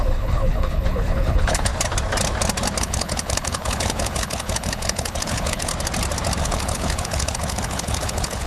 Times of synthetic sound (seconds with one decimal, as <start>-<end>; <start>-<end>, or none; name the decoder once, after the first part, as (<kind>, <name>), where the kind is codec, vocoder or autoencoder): 0.0-1.7 (codec, HILCodec); 2.8-5.7; 6.4-8.5